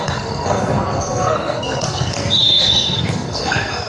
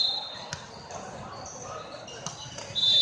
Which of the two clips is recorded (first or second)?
second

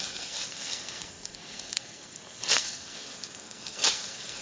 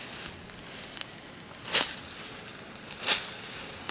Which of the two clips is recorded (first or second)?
second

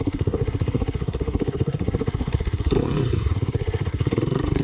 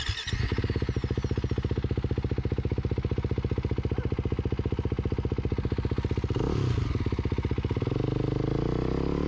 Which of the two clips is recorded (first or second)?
second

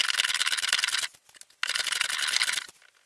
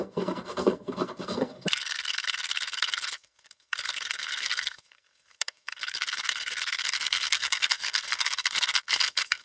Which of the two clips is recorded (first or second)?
first